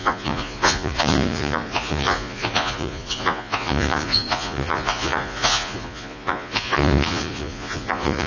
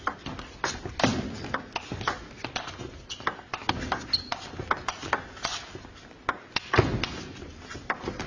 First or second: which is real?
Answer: second